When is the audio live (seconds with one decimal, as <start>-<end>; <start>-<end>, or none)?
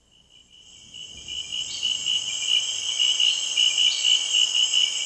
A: 0.0-1.5; 4.6-5.1